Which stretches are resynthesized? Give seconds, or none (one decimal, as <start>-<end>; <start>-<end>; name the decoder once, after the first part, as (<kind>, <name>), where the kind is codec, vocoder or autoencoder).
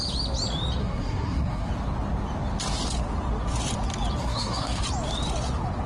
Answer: 0.8-1.7 (codec, SNAC); 4.2-4.8